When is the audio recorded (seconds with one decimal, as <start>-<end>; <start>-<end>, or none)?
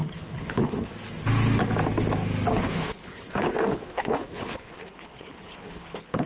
0.9-2.5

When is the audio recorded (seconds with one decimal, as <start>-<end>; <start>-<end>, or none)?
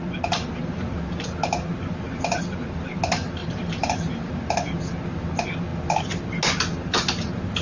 0.0-3.4; 4.3-7.6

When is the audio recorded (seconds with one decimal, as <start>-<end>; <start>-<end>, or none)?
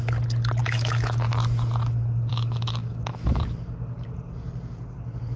0.0-0.6; 1.3-2.3; 3.4-5.4